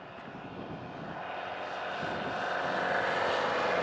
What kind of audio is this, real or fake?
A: real